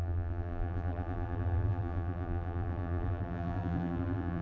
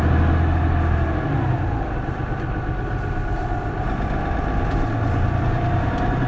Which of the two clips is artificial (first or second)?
first